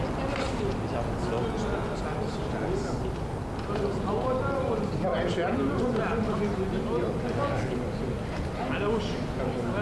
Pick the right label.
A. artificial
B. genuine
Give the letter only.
B